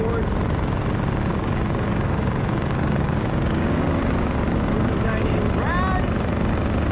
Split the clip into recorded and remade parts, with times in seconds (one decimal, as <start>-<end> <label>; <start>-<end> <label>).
0.0-1.3 recorded; 1.3-5.4 remade; 5.4-6.9 recorded